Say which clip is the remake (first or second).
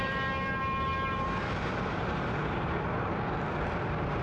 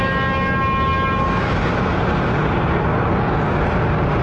first